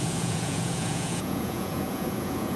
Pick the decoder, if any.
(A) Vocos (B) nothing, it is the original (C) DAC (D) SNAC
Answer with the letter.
A